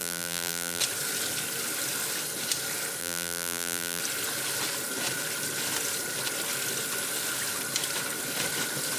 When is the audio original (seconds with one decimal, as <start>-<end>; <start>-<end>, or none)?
0.8-3.0; 4.0-9.0